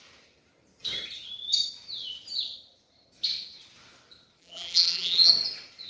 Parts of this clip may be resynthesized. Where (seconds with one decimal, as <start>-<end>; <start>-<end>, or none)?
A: 4.4-5.3

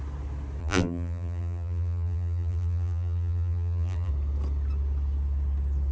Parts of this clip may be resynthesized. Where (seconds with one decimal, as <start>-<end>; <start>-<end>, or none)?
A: 0.6-4.1

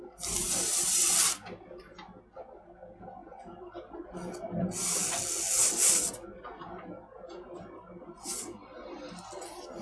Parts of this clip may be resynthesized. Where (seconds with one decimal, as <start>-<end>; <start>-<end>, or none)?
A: none

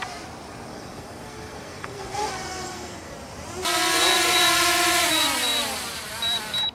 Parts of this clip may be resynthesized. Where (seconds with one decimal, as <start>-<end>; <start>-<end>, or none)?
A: 0.7-3.1

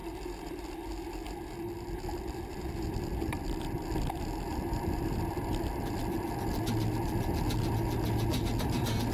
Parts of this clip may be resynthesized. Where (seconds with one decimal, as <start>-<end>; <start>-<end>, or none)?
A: 0.0-0.9; 2.5-3.5; 4.5-6.0